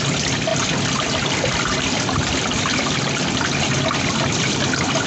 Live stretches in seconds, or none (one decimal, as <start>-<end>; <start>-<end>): 0.0-5.1